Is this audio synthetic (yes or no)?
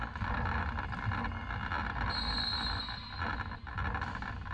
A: no